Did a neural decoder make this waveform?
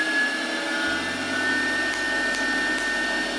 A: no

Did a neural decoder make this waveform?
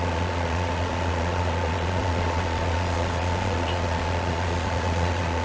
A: yes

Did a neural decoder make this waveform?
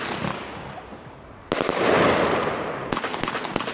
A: no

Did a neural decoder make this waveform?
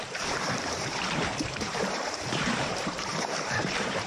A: yes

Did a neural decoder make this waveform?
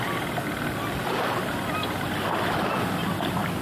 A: no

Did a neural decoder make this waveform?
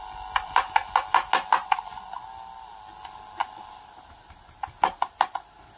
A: no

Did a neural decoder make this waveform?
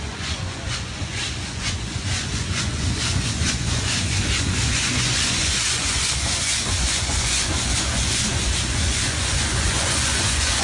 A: yes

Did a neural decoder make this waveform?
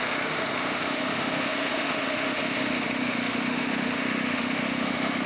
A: yes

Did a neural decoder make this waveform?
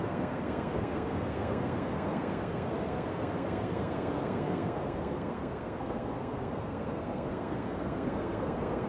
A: yes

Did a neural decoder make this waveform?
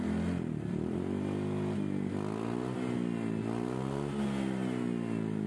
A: no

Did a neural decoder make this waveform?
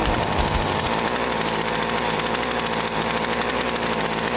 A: no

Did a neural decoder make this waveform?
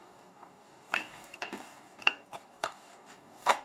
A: yes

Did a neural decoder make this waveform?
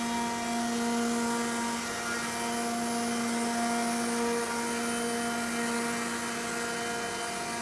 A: no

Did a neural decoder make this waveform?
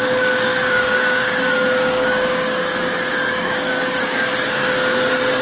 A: yes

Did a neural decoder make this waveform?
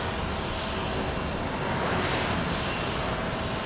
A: no